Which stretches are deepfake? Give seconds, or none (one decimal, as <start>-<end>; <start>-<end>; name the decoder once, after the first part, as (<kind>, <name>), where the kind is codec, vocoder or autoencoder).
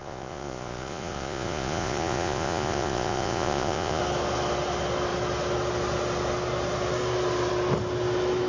0.0-4.0 (vocoder, Vocos)